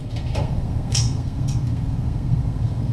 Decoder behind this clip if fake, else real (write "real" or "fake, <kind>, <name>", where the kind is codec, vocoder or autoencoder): fake, codec, SNAC